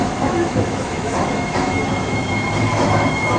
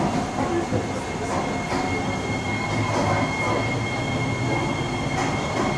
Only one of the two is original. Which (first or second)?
second